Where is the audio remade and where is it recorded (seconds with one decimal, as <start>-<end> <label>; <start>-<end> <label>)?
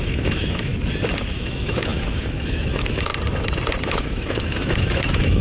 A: 0.0-0.7 remade; 0.7-1.3 recorded; 1.3-3.1 remade; 3.1-3.8 recorded; 3.8-5.4 remade